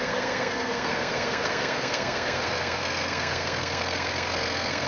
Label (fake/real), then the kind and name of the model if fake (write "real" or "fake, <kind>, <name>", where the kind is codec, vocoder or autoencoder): fake, codec, SNAC